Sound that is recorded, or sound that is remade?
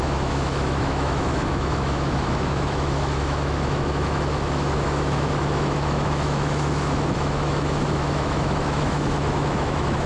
remade